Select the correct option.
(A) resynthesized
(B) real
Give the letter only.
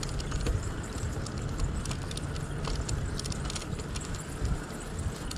B